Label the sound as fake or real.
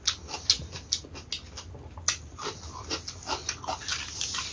real